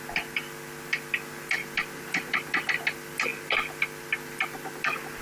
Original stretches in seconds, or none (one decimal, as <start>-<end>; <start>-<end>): 0.0-5.2